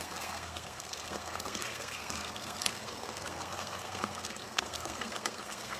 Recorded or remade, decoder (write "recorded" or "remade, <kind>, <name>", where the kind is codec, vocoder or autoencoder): remade, codec, SNAC